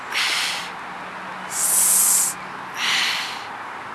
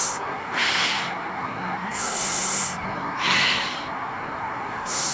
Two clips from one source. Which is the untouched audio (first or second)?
first